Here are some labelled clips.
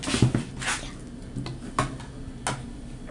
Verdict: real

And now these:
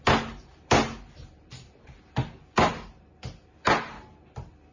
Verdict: real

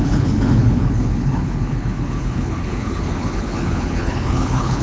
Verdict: fake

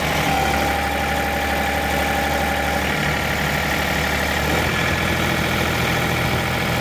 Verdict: real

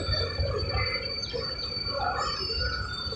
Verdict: real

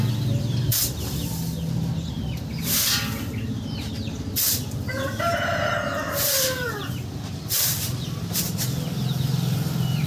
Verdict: fake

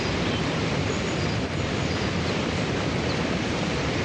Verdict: fake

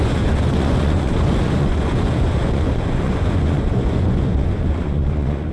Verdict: fake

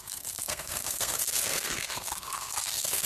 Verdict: fake